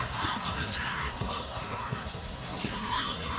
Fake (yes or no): yes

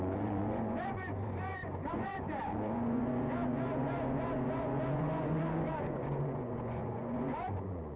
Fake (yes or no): yes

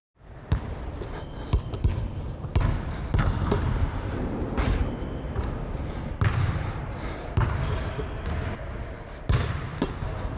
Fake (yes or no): no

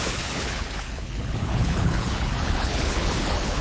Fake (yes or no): yes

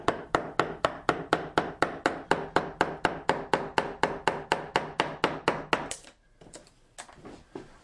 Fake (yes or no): no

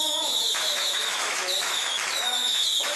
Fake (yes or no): yes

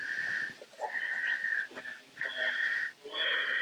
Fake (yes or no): no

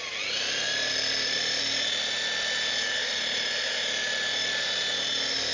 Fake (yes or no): no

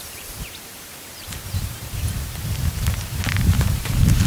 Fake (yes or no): yes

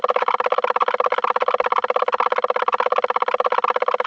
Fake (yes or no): no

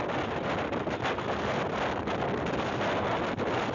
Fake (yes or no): no